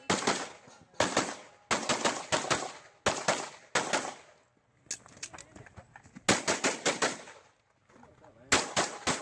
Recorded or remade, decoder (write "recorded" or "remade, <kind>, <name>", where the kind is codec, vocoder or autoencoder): recorded